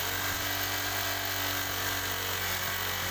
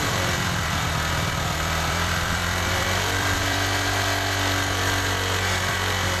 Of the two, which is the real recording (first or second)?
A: first